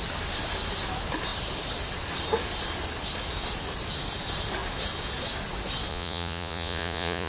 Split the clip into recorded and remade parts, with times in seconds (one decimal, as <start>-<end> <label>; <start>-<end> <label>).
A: 0.0-5.9 recorded; 5.9-7.3 remade

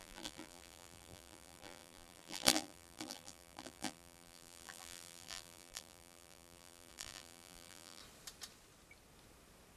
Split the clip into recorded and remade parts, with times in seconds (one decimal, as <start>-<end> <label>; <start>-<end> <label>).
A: 0.0-8.0 remade; 8.0-9.8 recorded

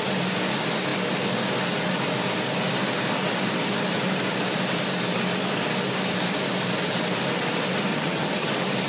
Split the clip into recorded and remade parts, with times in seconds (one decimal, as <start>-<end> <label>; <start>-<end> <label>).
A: 0.0-7.9 recorded; 7.9-8.5 remade; 8.5-8.9 recorded

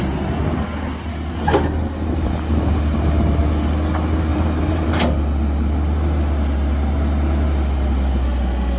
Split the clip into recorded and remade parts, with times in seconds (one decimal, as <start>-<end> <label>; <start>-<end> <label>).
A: 0.0-4.3 recorded; 4.3-4.9 remade; 4.9-8.8 recorded

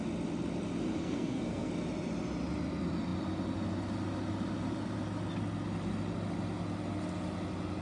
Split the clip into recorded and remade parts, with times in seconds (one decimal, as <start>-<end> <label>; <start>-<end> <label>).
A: 0.0-1.0 recorded; 1.0-1.7 remade; 1.7-7.8 recorded